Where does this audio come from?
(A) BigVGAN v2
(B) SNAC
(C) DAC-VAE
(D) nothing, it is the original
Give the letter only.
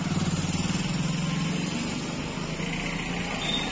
D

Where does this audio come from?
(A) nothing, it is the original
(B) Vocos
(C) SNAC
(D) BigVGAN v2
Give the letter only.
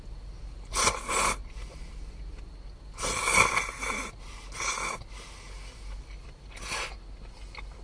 A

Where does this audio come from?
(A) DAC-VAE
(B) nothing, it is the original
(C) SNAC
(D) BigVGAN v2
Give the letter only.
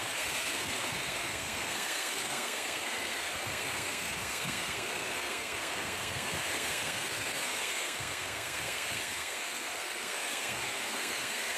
C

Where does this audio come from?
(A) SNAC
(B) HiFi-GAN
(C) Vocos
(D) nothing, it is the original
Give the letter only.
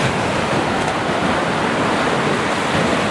D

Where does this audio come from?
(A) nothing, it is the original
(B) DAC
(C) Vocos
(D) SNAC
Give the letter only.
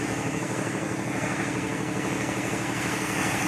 D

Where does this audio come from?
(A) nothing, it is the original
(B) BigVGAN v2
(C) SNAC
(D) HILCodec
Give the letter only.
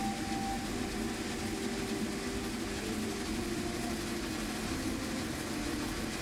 A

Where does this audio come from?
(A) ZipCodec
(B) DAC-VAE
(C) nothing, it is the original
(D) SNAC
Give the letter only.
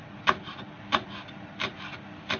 C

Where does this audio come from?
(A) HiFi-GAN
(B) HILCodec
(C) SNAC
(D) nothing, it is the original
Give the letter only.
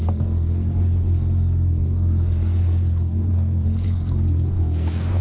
C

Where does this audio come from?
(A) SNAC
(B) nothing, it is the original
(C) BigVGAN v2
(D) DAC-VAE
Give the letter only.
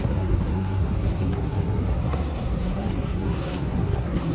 A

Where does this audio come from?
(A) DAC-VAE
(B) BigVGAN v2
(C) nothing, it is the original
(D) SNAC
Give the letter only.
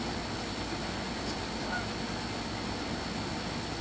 C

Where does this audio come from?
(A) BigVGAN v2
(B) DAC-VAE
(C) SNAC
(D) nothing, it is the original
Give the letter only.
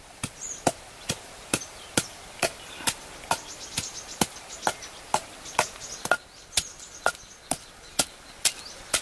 D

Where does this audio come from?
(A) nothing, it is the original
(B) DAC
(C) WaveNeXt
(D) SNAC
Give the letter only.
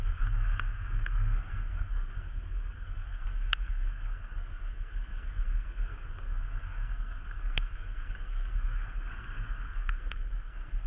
D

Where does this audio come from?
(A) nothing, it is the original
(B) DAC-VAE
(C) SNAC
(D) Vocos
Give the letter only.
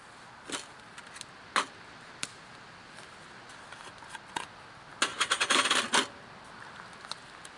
A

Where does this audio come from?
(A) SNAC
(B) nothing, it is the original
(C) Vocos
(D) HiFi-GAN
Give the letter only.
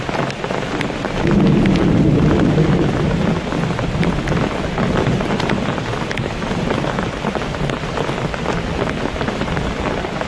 B